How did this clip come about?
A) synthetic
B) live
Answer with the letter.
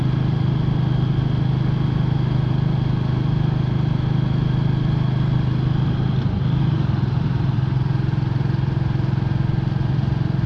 B